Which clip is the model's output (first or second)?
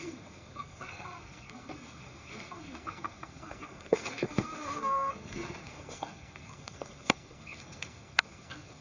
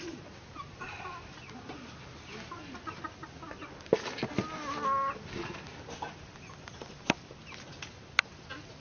first